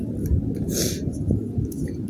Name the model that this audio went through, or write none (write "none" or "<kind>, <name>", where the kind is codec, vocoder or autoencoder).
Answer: none